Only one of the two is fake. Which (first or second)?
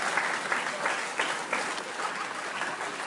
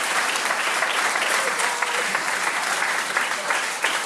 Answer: second